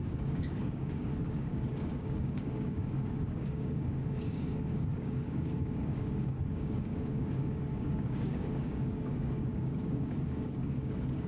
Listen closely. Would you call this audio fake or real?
fake